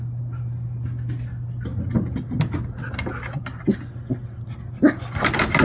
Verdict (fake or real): real